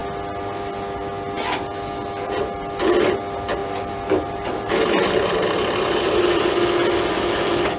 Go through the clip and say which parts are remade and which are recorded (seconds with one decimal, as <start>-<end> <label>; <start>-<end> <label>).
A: 0.0-3.6 recorded; 3.6-6.4 remade; 6.4-7.8 recorded